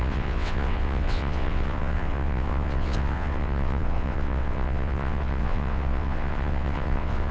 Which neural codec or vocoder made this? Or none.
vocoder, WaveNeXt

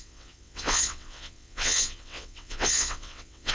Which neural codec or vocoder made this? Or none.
vocoder, WaveNeXt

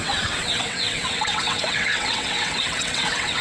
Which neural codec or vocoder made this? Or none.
vocoder, WaveNeXt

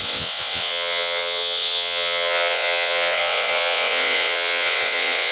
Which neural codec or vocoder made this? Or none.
vocoder, WaveNeXt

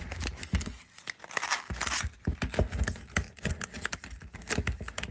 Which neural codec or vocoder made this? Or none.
none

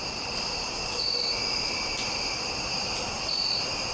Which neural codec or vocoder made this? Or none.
none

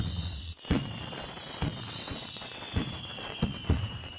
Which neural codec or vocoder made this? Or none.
vocoder, WaveNeXt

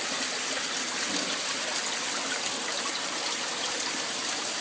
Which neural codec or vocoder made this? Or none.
none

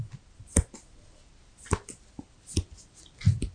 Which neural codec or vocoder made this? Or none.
none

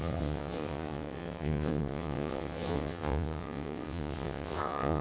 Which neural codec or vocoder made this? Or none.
vocoder, WaveNeXt